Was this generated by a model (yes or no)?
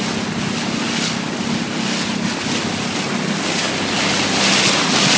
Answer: no